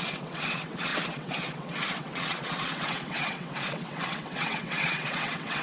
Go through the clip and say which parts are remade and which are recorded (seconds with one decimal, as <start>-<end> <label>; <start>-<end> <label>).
0.0-5.6 remade